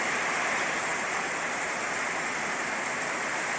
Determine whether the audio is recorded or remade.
recorded